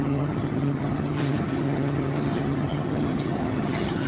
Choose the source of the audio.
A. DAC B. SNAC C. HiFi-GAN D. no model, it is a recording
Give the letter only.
C